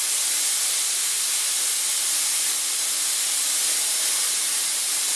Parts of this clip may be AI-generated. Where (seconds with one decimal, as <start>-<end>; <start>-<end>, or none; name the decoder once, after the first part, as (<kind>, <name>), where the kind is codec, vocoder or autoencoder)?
none